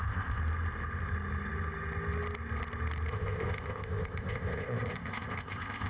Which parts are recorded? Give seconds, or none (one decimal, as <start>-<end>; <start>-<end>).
0.4-3.1